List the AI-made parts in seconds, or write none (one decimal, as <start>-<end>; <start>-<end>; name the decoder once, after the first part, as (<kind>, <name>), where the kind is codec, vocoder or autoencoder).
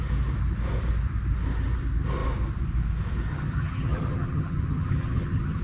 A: 3.3-5.6 (vocoder, HiFi-GAN)